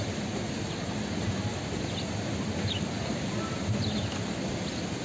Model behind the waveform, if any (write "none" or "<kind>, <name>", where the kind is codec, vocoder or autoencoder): none